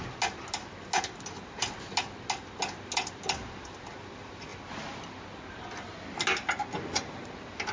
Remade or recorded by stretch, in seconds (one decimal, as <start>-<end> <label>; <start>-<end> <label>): 0.0-7.7 recorded